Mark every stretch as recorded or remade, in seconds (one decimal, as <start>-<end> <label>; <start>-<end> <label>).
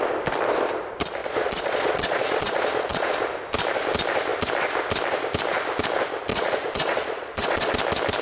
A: 0.0-1.2 recorded; 1.2-3.1 remade; 3.1-6.3 recorded; 6.3-7.7 remade; 7.7-8.2 recorded